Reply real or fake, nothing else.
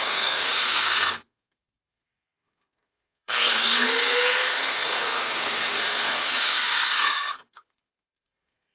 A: fake